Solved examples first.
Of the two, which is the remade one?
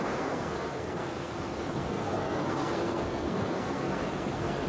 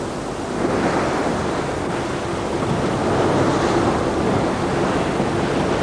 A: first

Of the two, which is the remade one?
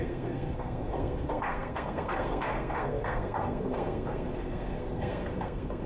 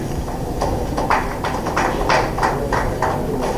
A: first